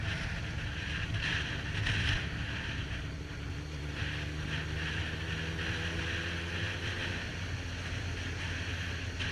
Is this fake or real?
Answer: real